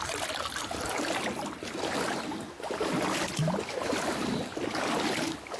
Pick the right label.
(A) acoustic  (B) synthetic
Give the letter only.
A